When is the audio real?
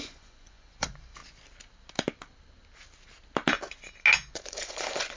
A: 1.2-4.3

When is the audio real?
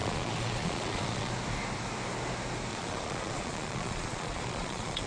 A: 1.3-2.7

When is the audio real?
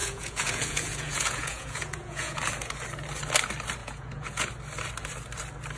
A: 2.4-3.8; 4.5-5.8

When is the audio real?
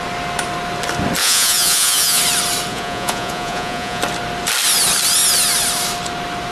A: 0.0-1.2; 2.2-2.7; 4.0-6.5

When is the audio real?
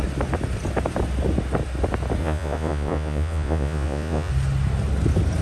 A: 0.0-2.2; 4.3-5.4